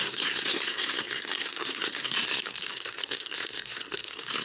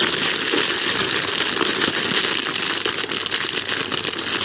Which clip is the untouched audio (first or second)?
second